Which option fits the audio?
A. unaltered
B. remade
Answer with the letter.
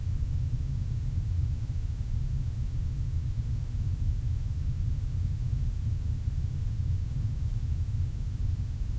B